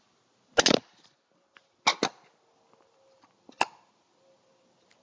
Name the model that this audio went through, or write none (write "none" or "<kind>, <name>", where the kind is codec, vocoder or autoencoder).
none